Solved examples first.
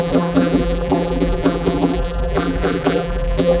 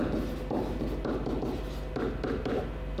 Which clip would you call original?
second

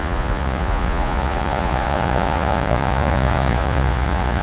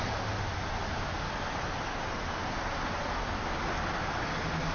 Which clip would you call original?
second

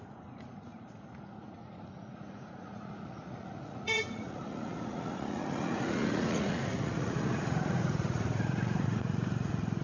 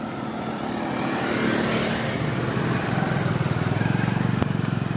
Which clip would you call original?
second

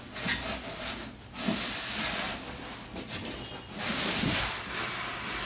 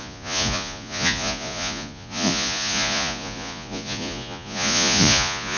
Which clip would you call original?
first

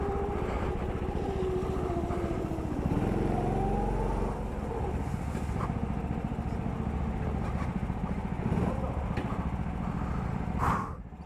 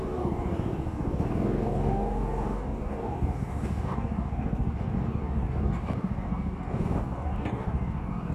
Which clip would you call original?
first